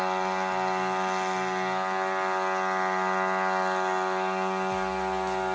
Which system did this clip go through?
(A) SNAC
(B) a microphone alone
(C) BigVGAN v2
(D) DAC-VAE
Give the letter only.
B